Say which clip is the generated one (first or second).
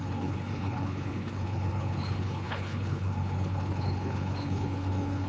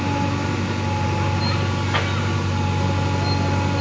first